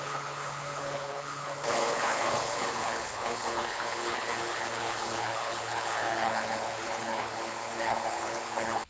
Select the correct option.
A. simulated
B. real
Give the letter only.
A